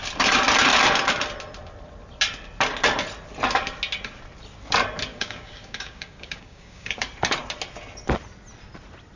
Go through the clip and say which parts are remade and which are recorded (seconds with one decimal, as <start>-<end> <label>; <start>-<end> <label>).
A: 0.0-5.1 recorded; 5.1-7.0 remade; 7.0-9.2 recorded